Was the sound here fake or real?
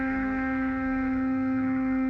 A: fake